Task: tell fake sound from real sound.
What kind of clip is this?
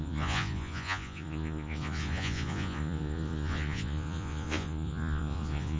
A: fake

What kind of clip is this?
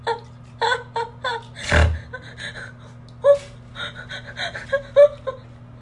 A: real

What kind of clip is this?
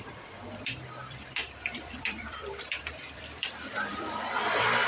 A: fake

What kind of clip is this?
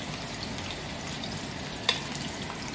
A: real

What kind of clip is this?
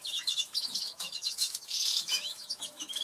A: fake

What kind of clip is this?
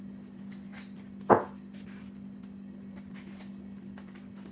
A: real